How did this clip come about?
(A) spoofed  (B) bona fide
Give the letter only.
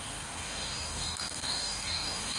A